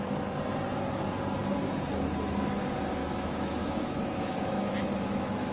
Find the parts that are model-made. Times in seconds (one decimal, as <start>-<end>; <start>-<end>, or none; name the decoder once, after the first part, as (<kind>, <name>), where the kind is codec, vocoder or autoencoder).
3.0-5.5 (autoencoder, DAC-VAE)

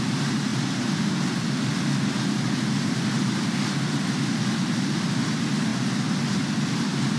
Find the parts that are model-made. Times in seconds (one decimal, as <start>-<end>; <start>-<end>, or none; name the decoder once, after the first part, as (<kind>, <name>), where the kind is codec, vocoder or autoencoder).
none

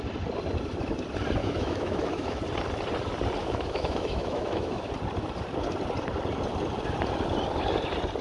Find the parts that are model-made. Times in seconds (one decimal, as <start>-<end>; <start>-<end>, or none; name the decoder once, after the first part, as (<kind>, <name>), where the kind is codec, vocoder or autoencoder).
1.4-2.4 (autoencoder, DAC-VAE); 3.4-4.9